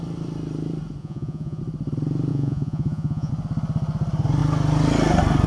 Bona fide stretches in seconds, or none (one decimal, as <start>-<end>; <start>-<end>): 0.0-1.0; 1.6-2.3; 3.3-5.5